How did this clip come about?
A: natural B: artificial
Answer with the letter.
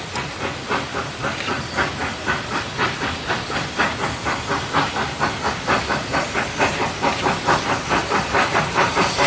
A